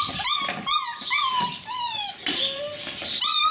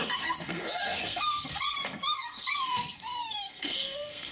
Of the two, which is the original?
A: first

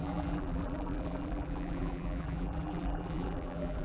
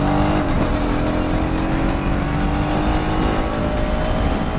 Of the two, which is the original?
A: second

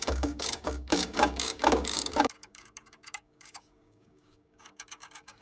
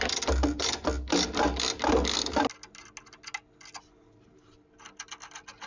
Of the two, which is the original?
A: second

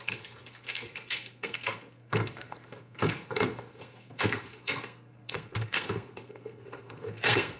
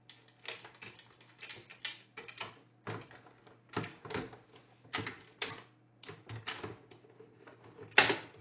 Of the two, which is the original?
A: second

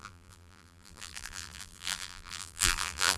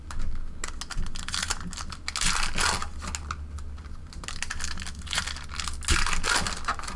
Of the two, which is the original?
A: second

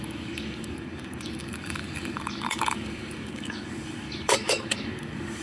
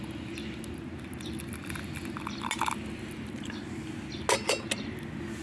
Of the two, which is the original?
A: second